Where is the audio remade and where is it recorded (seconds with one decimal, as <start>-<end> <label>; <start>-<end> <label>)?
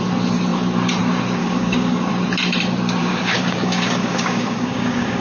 0.0-1.4 recorded; 1.4-2.1 remade; 2.1-3.0 recorded; 3.0-5.2 remade